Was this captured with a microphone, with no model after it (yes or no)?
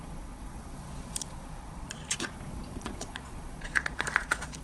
no